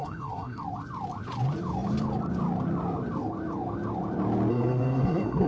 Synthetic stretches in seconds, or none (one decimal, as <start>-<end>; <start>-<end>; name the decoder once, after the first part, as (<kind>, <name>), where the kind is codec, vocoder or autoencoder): 0.0-0.6 (codec, SNAC); 4.5-5.5